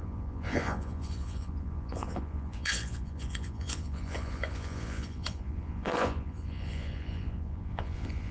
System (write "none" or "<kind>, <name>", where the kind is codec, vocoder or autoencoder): vocoder, Vocos